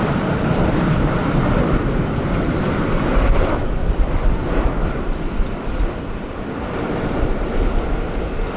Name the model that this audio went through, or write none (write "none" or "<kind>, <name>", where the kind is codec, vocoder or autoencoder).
vocoder, BigVGAN v2